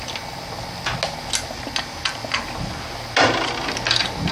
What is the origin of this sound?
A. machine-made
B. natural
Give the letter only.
B